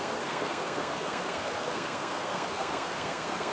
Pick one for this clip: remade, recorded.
remade